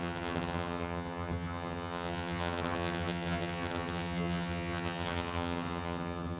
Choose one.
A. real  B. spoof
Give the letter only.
B